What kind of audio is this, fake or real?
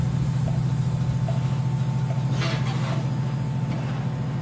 real